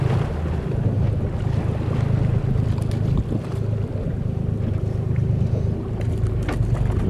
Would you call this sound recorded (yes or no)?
yes